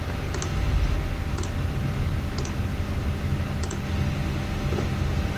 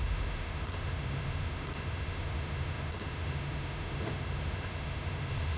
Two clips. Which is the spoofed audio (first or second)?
second